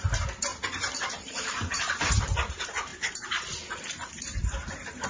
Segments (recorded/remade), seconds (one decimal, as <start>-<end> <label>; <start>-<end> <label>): 0.0-5.1 remade